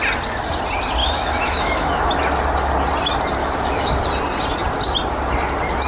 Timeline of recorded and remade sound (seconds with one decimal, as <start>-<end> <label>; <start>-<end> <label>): 0.0-1.0 recorded; 1.0-2.1 remade; 2.1-3.4 recorded; 3.4-4.0 remade; 4.0-5.9 recorded